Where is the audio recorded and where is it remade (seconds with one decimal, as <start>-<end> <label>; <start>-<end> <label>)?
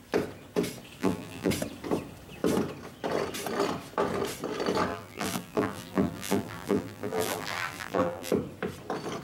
0.0-1.0 recorded; 1.0-1.5 remade; 1.5-4.9 recorded; 4.9-8.3 remade; 8.3-9.2 recorded